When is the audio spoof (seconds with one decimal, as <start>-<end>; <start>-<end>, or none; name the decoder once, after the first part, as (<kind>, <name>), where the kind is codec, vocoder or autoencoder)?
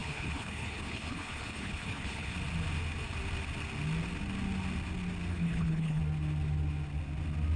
0.0-2.3 (codec, HILCodec); 5.3-6.0